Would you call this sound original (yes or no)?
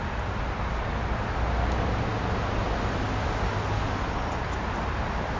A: yes